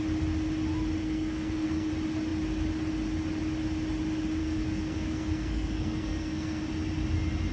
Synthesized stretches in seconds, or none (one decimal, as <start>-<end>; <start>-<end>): 1.0-1.9; 4.4-6.6